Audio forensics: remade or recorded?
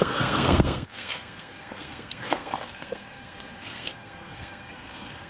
remade